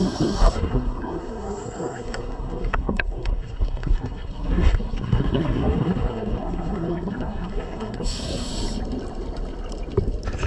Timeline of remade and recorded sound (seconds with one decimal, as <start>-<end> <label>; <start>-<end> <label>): 0.0-8.5 remade; 8.5-10.5 recorded